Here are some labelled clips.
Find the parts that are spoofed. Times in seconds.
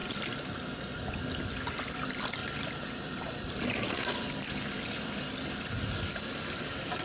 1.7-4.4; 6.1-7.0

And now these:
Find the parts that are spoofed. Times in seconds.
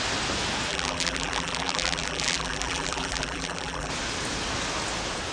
0.7-3.9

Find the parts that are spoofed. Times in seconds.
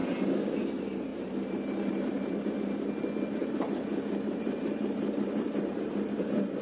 1.1-2.5; 3.4-6.6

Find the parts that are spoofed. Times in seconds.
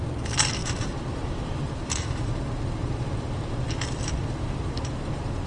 0.0-5.5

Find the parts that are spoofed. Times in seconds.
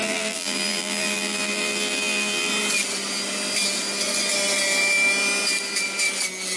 0.0-2.5